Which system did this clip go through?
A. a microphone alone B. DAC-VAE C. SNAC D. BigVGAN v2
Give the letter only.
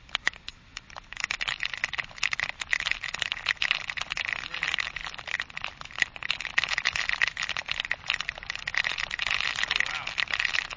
A